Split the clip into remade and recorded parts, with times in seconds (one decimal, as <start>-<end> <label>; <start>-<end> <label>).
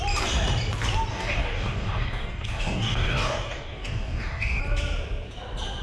0.0-1.1 recorded; 1.1-4.6 remade; 4.6-5.8 recorded